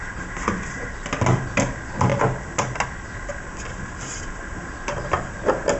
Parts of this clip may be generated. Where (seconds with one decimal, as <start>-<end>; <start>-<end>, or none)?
none